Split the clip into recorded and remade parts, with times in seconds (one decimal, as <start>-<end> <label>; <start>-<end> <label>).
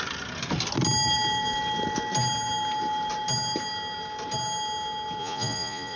0.0-5.2 recorded; 5.2-6.0 remade